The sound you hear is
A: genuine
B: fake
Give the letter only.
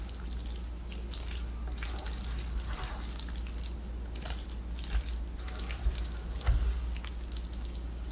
A